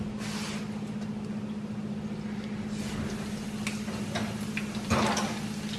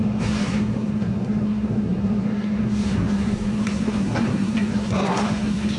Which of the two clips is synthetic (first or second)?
second